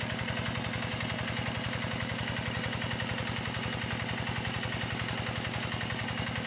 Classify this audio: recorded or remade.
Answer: recorded